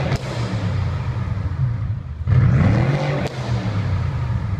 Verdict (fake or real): real